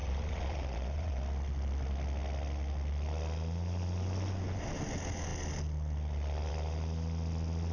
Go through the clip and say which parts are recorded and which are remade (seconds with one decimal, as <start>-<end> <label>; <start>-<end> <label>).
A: 0.0-1.2 remade; 1.2-7.7 recorded